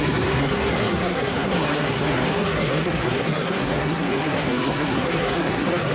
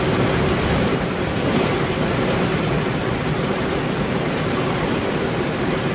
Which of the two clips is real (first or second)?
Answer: second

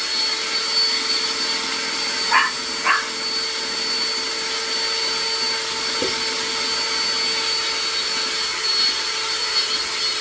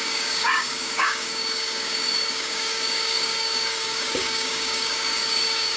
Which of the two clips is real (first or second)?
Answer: first